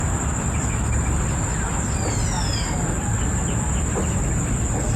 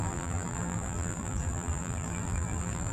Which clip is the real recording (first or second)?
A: first